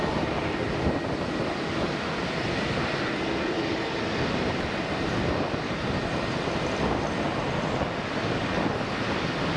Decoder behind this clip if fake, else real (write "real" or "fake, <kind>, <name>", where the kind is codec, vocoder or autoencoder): real